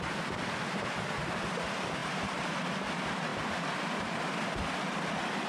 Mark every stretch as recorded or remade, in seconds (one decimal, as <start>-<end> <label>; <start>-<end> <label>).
0.0-5.5 remade